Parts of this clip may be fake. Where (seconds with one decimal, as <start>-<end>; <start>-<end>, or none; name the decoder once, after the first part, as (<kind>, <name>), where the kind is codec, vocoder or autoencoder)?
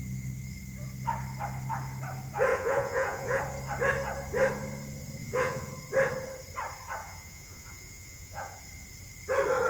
2.5-3.4 (vocoder, Vocos); 5.2-5.7; 7.0-8.6